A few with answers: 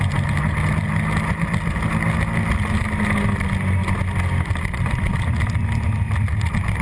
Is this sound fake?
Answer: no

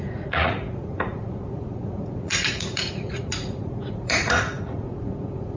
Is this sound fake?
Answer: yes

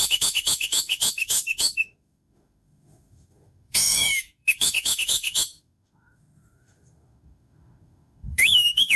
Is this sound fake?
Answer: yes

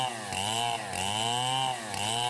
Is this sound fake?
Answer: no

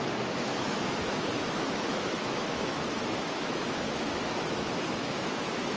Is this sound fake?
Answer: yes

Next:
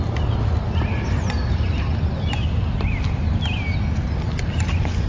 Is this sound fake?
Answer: no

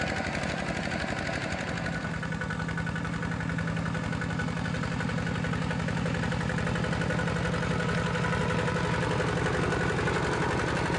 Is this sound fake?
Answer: no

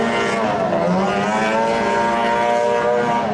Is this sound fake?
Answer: no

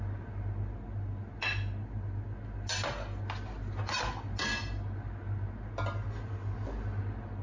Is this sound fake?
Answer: no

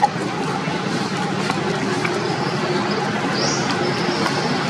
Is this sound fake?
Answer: no